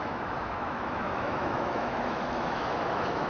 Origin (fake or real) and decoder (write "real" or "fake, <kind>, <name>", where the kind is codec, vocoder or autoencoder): fake, autoencoder, DAC-VAE